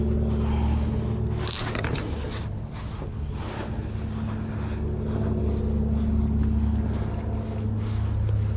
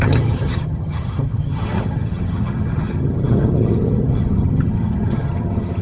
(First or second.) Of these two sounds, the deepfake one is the second